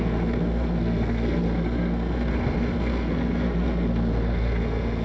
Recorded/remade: remade